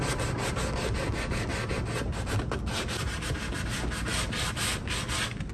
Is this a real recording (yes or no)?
yes